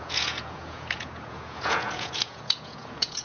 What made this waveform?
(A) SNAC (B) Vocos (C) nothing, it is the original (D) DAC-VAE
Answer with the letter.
B